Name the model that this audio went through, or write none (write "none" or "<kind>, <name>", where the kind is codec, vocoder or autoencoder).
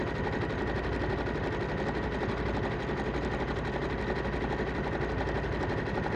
none